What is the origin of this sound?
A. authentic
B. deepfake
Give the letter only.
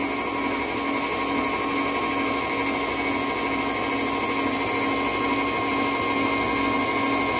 A